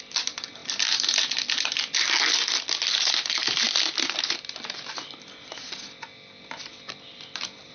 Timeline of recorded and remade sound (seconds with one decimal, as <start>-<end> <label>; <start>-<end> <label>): 0.0-7.7 recorded